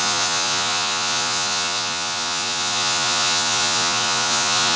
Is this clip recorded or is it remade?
remade